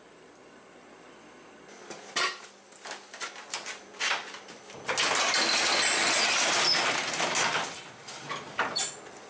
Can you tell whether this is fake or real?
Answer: real